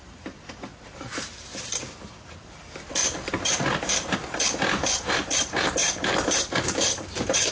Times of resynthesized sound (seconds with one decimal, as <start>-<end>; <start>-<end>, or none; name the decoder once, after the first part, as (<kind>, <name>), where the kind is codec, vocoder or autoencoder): 0.0-0.7 (vocoder, BigVGAN v2); 1.4-3.0; 5.1-7.5